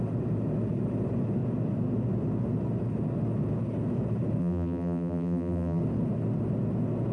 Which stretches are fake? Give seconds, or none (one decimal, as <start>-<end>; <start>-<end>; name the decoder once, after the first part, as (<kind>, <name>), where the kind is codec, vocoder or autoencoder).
4.4-5.8 (vocoder, BigVGAN v2)